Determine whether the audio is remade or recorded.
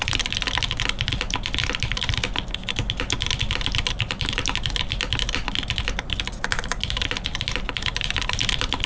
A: recorded